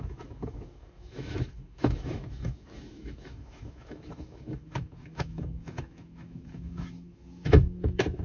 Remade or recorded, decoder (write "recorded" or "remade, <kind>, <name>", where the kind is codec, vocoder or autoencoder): remade, autoencoder, DAC-VAE